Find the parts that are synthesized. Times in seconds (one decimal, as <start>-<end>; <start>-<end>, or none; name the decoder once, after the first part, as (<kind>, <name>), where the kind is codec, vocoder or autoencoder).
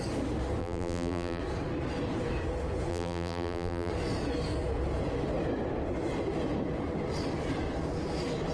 0.6-1.4 (vocoder, BigVGAN v2); 2.9-3.9